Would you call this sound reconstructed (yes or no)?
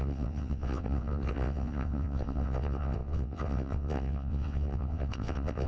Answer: yes